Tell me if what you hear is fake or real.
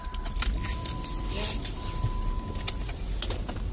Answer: real